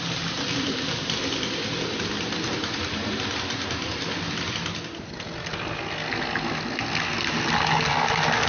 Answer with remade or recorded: recorded